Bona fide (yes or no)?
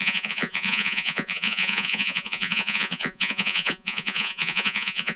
no